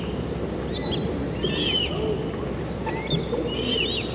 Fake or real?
real